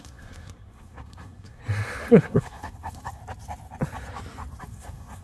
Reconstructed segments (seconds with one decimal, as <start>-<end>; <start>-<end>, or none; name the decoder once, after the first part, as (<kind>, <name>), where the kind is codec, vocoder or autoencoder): 0.0-1.6 (codec, SNAC); 2.1-3.2; 4.6-5.2